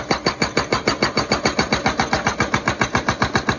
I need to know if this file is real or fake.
real